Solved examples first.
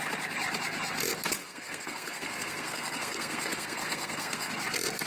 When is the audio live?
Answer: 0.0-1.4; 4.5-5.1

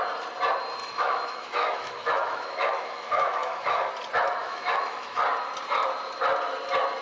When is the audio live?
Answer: 0.0-0.8; 3.9-4.4; 5.2-7.0

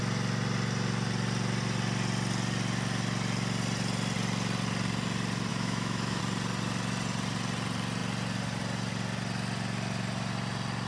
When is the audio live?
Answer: 0.0-5.5; 6.2-10.9